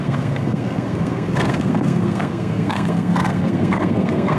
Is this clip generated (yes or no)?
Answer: yes